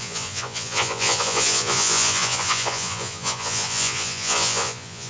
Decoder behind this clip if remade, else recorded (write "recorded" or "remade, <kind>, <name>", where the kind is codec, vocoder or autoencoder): remade, vocoder, Vocos